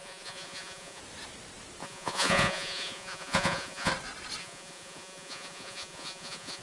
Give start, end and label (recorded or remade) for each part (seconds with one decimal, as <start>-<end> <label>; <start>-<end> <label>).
0.0-1.0 remade; 1.0-1.8 recorded; 1.8-3.9 remade; 3.9-4.4 recorded; 4.4-6.6 remade